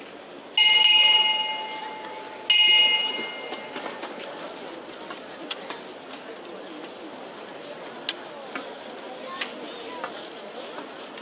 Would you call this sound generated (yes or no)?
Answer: no